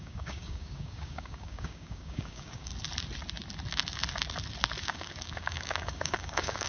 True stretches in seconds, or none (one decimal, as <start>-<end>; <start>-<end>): 2.7-4.8

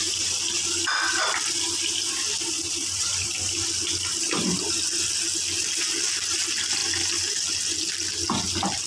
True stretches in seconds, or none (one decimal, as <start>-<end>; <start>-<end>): 0.0-2.8; 5.1-8.9